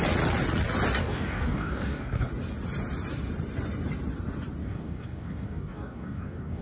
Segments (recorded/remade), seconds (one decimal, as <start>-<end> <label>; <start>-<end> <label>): 0.0-1.0 recorded; 1.0-2.3 remade; 2.3-4.6 recorded; 4.6-6.6 remade